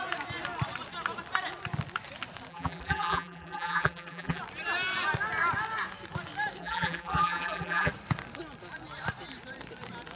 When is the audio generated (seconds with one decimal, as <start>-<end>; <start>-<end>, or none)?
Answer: 2.5-4.4; 6.6-7.9